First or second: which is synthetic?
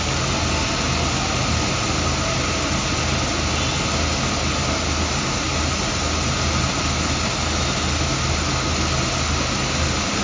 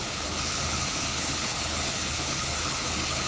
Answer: second